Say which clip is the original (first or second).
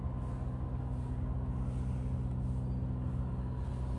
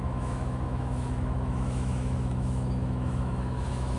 first